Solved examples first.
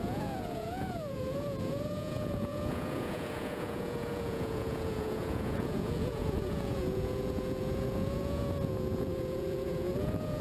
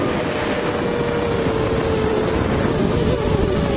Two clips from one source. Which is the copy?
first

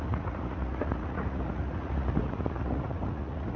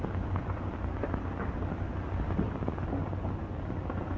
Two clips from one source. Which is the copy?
first